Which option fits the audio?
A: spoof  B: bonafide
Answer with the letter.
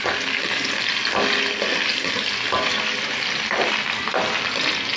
B